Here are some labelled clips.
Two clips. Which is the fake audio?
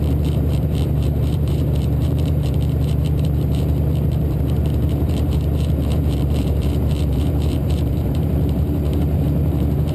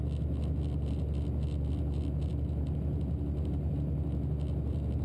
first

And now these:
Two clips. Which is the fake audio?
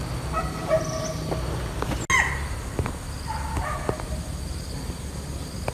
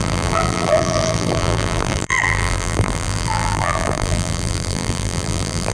second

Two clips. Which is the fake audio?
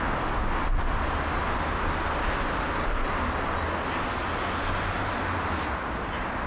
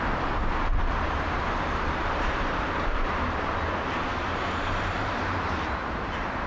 second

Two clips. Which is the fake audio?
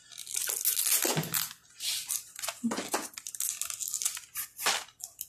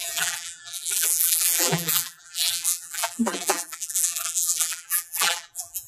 second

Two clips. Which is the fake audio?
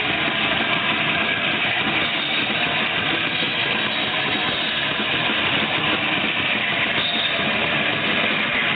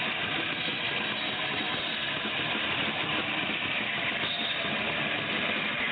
second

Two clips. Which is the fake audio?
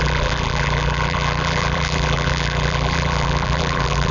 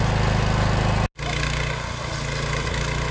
first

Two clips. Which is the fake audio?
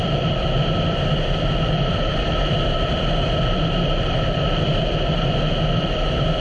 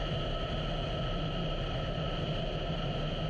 first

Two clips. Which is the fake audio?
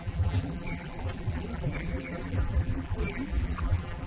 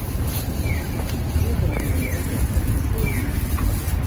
first